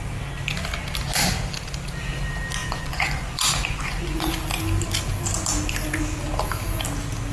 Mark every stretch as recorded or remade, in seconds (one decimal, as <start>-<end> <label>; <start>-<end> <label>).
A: 0.0-2.6 recorded; 2.6-4.3 remade; 4.3-7.3 recorded